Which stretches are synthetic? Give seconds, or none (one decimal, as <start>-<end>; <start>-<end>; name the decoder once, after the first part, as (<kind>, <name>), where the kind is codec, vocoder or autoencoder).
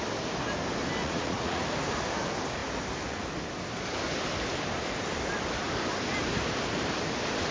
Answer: 1.0-1.6 (vocoder, Vocos)